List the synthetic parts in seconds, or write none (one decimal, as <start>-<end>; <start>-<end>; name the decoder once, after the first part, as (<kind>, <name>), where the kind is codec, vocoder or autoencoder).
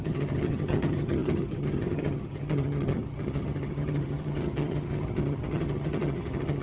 0.0-6.6 (vocoder, HiFi-GAN)